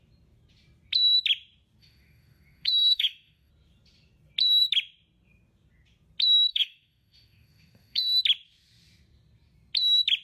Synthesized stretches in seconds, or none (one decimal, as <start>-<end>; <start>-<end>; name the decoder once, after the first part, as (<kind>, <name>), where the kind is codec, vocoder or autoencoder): 1.8-3.5 (autoencoder, DAC-VAE); 6.5-8.2